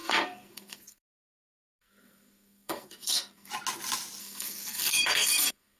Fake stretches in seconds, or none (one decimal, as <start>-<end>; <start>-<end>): 0.0-1.2; 1.7-3.5; 4.2-5.8